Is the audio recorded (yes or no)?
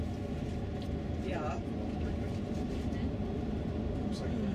yes